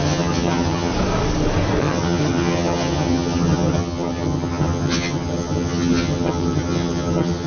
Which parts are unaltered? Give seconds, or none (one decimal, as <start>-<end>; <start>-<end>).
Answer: 0.9-1.8